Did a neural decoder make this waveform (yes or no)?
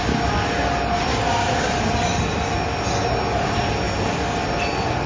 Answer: no